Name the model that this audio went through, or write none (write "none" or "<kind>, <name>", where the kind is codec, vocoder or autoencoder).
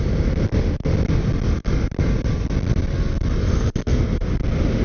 none